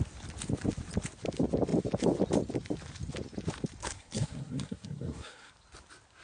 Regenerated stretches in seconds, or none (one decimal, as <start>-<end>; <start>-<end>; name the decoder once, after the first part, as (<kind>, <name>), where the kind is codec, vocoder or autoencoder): 3.8-5.5 (codec, SNAC)